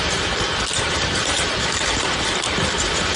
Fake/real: fake